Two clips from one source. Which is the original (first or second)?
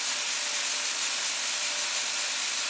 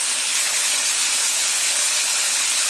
first